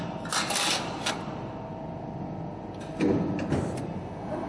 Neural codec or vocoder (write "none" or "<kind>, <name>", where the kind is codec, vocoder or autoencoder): none